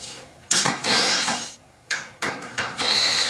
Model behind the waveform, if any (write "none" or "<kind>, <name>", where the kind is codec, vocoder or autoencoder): codec, SNAC